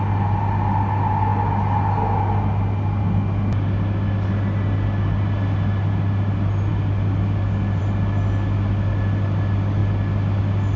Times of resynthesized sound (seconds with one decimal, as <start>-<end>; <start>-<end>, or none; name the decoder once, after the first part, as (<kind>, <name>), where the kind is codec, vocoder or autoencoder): none